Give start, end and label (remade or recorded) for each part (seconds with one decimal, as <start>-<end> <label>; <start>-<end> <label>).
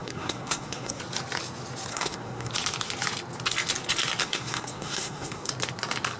0.0-1.0 remade; 1.0-1.9 recorded; 1.9-2.5 remade; 2.5-4.2 recorded; 4.2-5.5 remade; 5.5-6.2 recorded